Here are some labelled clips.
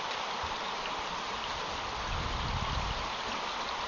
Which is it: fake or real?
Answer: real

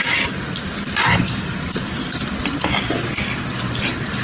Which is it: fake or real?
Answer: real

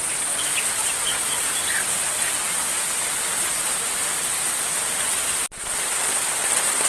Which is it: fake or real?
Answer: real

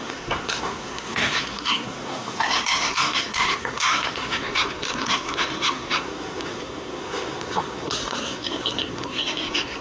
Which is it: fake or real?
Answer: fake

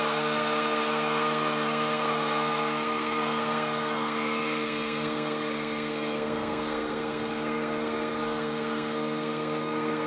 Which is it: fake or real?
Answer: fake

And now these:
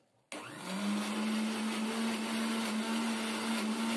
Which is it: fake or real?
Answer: real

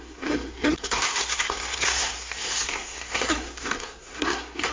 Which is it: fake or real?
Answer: fake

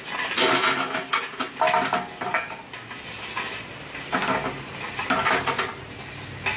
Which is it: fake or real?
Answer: real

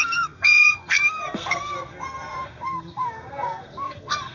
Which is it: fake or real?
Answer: fake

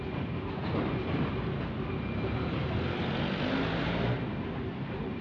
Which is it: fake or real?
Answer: real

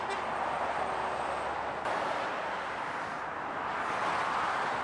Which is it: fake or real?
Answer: real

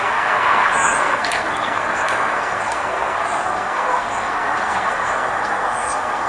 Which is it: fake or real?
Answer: fake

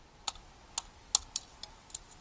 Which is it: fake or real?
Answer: real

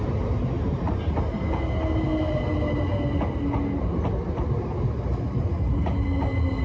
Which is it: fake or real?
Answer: real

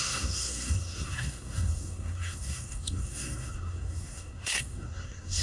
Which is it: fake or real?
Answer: fake